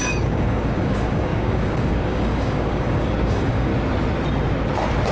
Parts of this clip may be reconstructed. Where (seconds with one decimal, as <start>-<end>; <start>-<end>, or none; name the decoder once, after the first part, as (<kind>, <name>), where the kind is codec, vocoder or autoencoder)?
0.0-3.7 (codec, DAC)